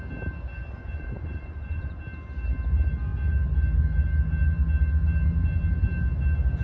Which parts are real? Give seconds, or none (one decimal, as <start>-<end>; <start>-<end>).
0.0-0.8; 1.9-6.6